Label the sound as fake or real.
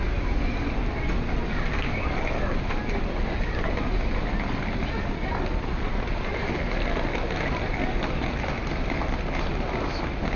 real